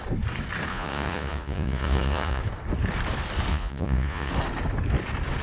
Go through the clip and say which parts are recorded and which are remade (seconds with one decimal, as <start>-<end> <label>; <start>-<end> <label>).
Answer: 0.0-0.7 recorded; 0.7-2.4 remade; 2.4-3.5 recorded; 3.5-4.3 remade; 4.3-5.4 recorded